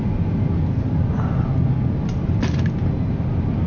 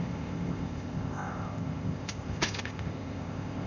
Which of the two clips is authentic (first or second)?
first